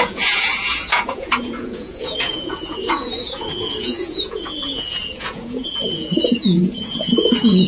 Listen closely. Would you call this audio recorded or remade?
remade